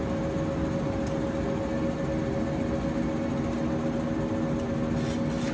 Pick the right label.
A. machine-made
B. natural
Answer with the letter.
B